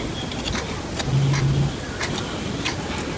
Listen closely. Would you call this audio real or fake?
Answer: real